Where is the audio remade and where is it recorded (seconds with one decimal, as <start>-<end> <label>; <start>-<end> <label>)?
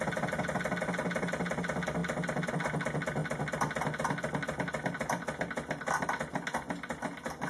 0.0-7.5 recorded